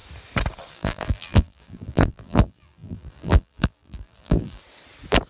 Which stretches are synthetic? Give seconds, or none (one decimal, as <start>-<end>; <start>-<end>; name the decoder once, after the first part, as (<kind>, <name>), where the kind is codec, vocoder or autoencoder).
0.7-4.6 (vocoder, BigVGAN v2)

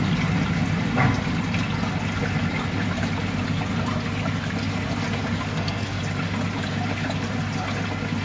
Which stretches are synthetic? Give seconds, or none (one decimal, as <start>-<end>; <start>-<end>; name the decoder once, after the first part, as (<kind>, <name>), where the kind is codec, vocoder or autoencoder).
5.5-6.0 (codec, SNAC)

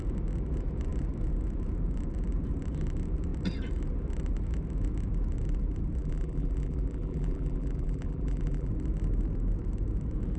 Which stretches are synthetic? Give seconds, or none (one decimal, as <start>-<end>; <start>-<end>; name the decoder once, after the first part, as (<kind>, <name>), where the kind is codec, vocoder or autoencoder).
6.0-8.7 (vocoder, BigVGAN v2)

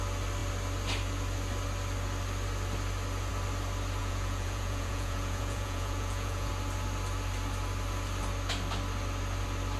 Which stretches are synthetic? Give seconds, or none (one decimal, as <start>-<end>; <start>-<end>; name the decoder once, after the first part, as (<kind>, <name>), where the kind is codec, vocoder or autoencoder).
4.0-6.5 (vocoder, Vocos)